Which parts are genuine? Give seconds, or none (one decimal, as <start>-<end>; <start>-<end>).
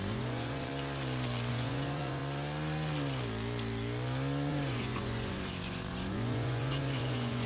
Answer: 0.7-1.5; 2.2-4.5